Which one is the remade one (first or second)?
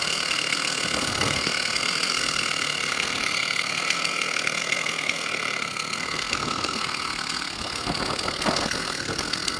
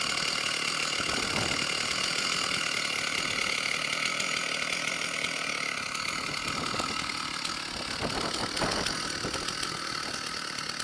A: first